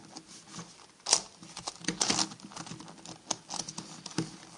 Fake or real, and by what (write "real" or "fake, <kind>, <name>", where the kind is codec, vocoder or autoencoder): real